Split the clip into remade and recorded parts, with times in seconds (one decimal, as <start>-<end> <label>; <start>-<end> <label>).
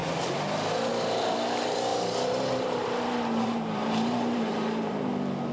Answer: 0.0-1.9 recorded; 1.9-5.1 remade; 5.1-5.5 recorded